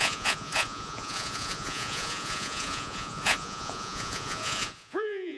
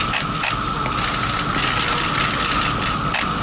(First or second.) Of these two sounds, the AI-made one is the first